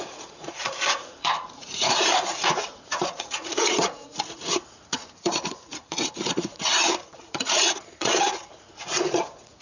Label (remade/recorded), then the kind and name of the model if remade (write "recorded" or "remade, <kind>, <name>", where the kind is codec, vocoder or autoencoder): remade, vocoder, Vocos